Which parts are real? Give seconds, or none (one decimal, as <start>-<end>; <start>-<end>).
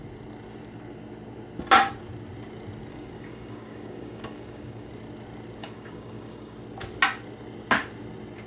0.0-2.9; 4.9-5.6; 6.6-8.5